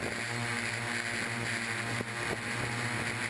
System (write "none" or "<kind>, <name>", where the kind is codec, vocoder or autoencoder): none